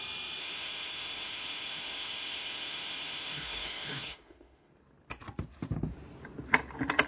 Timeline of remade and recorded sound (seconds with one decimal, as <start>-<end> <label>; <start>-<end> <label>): 0.0-0.4 recorded; 0.4-4.7 remade; 4.7-7.1 recorded